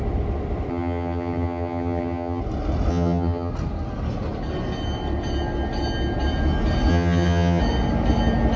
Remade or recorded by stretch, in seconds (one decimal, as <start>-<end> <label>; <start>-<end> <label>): 0.0-0.7 recorded; 0.7-2.4 remade; 2.4-2.9 recorded; 2.9-3.5 remade; 3.5-6.9 recorded; 6.9-7.6 remade; 7.6-8.6 recorded